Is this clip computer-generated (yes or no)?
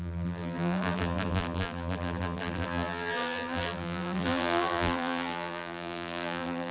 yes